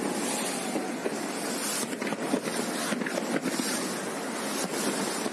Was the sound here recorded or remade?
recorded